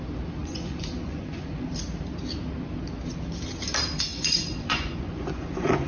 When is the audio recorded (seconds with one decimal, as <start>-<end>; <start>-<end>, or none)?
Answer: 0.0-0.4; 1.7-4.1